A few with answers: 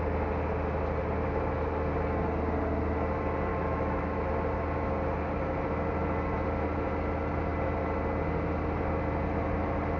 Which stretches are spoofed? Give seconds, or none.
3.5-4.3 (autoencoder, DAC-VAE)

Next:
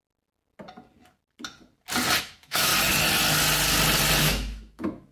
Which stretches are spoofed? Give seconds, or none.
2.2-2.7 (autoencoder, DAC-VAE); 4.2-5.1

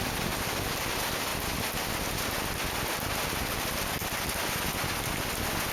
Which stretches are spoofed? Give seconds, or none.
none

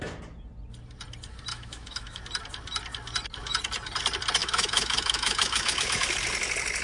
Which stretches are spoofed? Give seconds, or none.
1.5-2.2 (autoencoder, DAC-VAE); 4.4-6.1

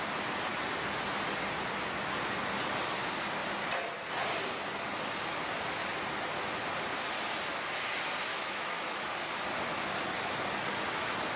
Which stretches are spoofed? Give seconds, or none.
8.3-9.1 (autoencoder, DAC-VAE)